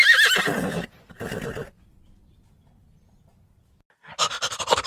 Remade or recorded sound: recorded